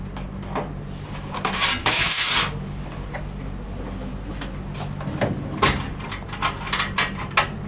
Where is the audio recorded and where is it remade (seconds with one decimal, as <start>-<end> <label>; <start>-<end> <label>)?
0.0-1.8 recorded; 1.8-2.3 remade; 2.3-7.7 recorded